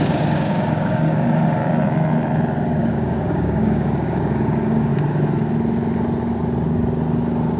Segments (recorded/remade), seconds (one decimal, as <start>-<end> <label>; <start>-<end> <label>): 0.0-1.6 remade; 1.6-2.7 recorded; 2.7-4.9 remade; 4.9-7.6 recorded